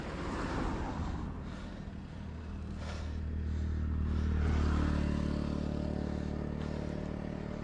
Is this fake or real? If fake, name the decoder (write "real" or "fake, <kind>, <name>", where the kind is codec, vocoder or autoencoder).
real